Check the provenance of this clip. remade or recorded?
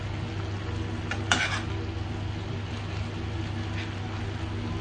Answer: recorded